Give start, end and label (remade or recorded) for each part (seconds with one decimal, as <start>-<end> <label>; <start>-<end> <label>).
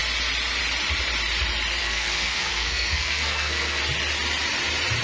0.0-1.8 recorded; 1.8-3.8 remade; 3.8-5.0 recorded